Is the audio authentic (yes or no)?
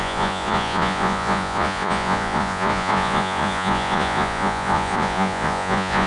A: no